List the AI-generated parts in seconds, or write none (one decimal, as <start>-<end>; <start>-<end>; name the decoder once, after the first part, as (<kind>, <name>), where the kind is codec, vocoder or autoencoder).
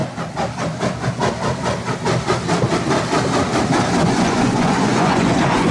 4.0-5.7 (vocoder, Vocos)